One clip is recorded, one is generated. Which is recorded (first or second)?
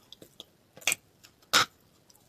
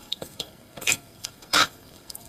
first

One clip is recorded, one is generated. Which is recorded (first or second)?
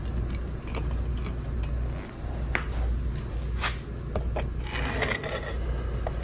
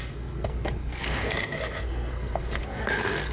first